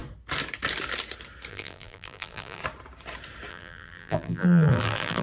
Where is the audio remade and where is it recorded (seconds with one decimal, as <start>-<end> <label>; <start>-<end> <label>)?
0.0-1.5 recorded; 1.5-2.6 remade; 2.6-3.5 recorded; 3.5-5.2 remade